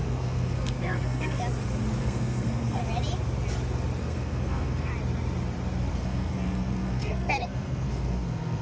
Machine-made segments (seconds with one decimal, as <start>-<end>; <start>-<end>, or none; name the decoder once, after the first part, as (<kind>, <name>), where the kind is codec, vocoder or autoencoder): 0.0-1.4 (codec, SNAC); 2.0-2.8; 4.0-4.9; 5.9-8.6

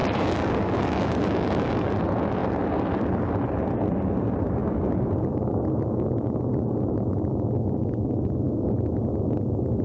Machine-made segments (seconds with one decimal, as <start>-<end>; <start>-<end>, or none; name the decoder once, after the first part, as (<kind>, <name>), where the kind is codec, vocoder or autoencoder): 0.0-1.9 (codec, DAC)